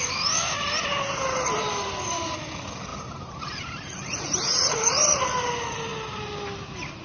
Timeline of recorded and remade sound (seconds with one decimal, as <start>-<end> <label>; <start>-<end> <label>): 0.0-2.9 recorded; 2.9-5.2 remade; 5.2-7.0 recorded